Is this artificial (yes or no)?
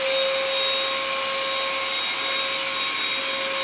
no